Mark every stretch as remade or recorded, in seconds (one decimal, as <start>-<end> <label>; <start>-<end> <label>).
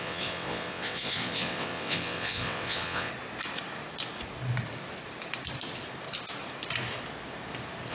0.0-3.1 remade; 3.1-7.9 recorded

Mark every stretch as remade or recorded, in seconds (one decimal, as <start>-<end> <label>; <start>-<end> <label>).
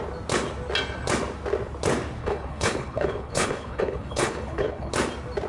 0.0-2.2 recorded; 2.2-4.9 remade; 4.9-5.5 recorded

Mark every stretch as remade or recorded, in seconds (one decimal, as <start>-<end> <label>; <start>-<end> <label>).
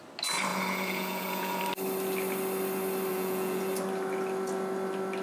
0.0-0.5 recorded; 0.5-1.6 remade; 1.6-3.1 recorded; 3.1-3.6 remade; 3.6-5.2 recorded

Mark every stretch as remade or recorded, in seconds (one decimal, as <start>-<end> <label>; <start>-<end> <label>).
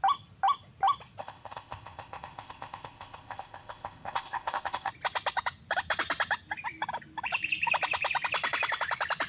0.0-1.2 recorded; 1.2-4.9 remade; 4.9-9.3 recorded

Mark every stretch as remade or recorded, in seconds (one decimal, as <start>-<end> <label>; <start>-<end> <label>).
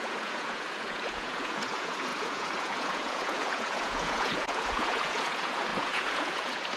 0.0-6.8 remade